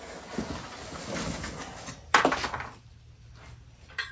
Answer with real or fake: real